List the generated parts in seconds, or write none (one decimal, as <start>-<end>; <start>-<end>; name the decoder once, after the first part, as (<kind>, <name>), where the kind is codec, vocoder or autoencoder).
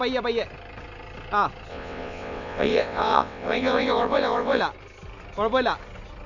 1.7-4.6 (vocoder, WaveNeXt)